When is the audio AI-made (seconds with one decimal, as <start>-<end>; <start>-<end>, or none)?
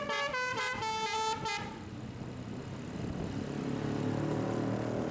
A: none